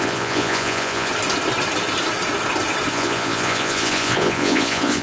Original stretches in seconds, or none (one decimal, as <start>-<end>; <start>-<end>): 1.1-2.9